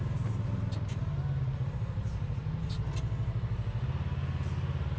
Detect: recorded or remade recorded